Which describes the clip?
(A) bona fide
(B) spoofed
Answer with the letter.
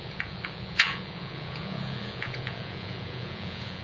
B